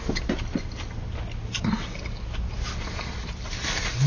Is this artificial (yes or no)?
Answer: no